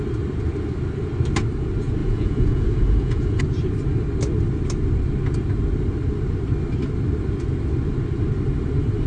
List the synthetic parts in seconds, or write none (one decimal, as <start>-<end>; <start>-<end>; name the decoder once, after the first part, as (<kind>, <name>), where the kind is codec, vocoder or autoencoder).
2.0-3.4 (vocoder, Vocos)